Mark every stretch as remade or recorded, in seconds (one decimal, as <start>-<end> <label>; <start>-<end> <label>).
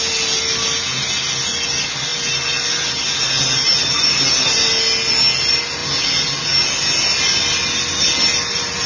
0.0-8.9 recorded